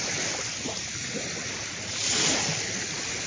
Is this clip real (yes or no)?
yes